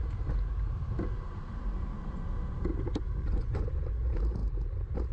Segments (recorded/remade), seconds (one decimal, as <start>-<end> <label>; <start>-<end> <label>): 0.0-3.2 recorded; 3.2-3.9 remade; 3.9-5.1 recorded